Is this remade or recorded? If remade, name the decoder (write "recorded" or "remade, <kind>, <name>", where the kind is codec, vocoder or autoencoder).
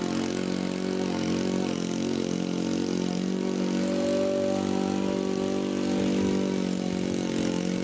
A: recorded